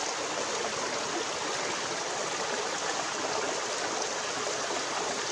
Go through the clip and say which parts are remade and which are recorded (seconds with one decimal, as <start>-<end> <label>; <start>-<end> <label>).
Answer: 0.0-5.3 recorded

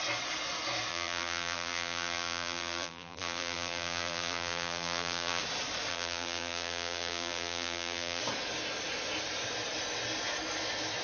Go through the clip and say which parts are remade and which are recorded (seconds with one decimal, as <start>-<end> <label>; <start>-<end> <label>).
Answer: 0.0-0.9 recorded; 0.9-5.4 remade; 5.4-5.9 recorded; 5.9-8.2 remade; 8.2-11.0 recorded